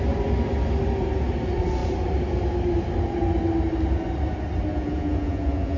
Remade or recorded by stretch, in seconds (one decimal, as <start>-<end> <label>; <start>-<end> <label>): 0.0-4.7 recorded; 4.7-5.8 remade